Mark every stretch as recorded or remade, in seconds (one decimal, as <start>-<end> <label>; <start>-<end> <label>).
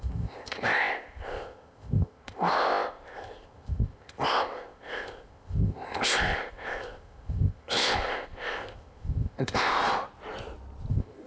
0.0-9.8 remade; 9.8-10.9 recorded; 10.9-11.3 remade